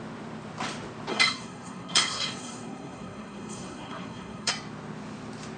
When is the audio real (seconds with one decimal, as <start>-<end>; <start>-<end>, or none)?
0.0-1.1; 4.5-5.6